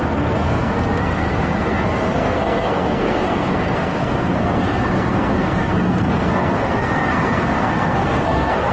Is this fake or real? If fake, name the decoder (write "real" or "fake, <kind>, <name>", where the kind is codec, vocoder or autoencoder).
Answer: fake, codec, SNAC